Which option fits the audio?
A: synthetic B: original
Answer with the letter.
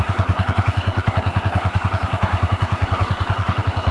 A